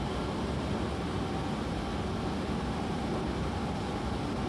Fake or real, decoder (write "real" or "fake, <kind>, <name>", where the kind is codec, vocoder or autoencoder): real